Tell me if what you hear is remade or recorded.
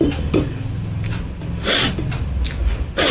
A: recorded